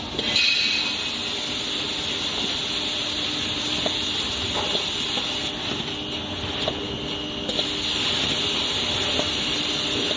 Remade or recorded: recorded